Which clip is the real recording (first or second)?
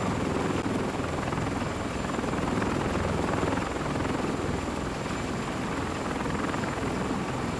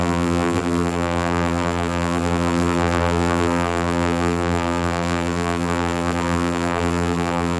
first